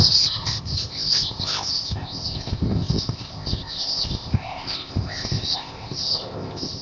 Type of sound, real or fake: fake